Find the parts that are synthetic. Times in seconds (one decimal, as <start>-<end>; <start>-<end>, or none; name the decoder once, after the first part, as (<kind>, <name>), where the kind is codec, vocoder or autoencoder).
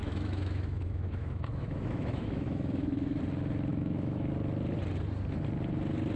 0.0-3.2 (autoencoder, DAC-VAE); 3.7-4.3